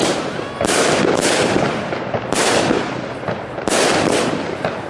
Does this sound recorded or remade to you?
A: recorded